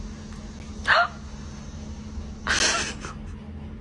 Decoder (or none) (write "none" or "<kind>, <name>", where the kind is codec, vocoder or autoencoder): none